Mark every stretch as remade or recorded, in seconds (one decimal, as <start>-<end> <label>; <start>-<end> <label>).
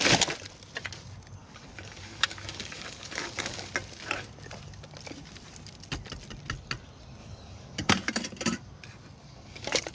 0.0-1.4 recorded; 1.4-3.7 remade; 3.7-7.2 recorded; 7.2-7.9 remade; 7.9-9.2 recorded; 9.2-9.9 remade